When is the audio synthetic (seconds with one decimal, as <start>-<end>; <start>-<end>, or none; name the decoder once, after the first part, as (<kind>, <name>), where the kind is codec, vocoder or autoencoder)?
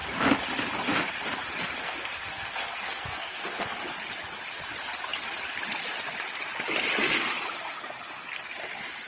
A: 1.8-3.7 (codec, SNAC)